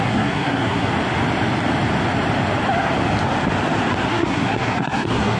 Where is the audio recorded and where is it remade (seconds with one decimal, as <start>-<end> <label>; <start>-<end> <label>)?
0.0-0.9 remade; 0.9-4.1 recorded; 4.1-5.4 remade